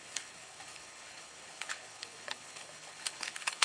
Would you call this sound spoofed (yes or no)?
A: yes